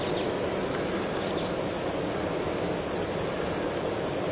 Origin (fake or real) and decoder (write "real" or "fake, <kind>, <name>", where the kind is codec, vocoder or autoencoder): real